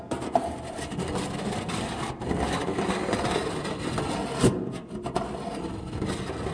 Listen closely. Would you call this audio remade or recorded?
recorded